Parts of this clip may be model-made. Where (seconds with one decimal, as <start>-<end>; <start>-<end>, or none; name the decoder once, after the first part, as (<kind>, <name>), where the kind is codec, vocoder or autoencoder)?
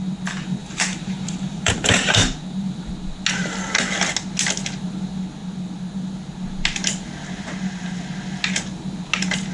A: 0.6-2.9 (vocoder, BigVGAN v2)